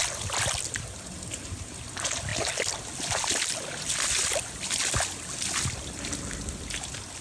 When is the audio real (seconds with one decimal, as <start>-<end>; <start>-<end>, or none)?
0.0-7.2